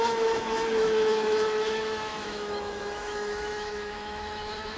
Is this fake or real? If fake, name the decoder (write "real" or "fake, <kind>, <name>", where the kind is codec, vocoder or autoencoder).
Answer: fake, autoencoder, DAC-VAE